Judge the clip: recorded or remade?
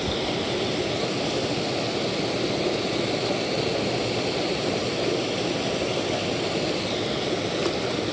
recorded